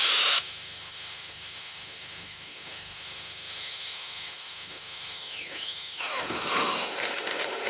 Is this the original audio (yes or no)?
no